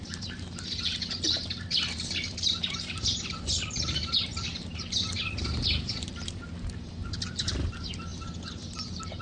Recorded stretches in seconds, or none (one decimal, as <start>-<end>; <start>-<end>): none